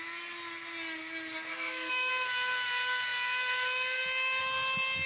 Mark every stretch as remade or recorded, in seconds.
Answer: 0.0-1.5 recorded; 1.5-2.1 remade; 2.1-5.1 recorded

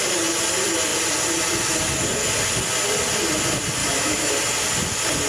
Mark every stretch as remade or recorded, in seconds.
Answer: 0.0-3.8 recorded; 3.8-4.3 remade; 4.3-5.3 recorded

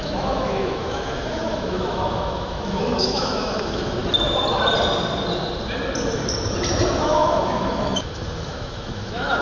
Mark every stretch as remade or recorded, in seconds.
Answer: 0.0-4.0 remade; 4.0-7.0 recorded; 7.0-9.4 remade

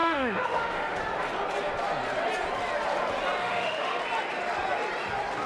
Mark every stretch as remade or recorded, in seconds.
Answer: 0.0-1.0 remade; 1.0-3.4 recorded; 3.4-4.0 remade; 4.0-5.5 recorded

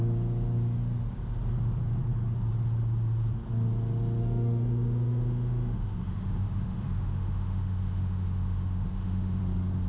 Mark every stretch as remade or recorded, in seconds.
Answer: 0.0-4.2 recorded; 4.2-9.4 remade; 9.4-9.9 recorded

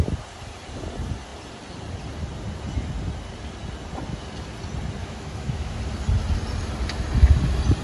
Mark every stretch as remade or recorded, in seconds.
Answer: 0.0-5.0 recorded; 5.0-5.8 remade; 5.8-7.8 recorded

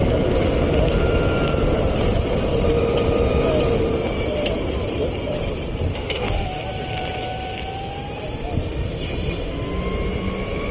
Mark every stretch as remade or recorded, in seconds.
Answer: 0.0-5.9 recorded; 5.9-6.6 remade; 6.6-10.7 recorded

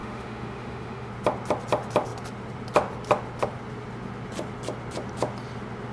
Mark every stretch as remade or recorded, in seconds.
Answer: 0.0-1.1 remade; 1.1-5.9 recorded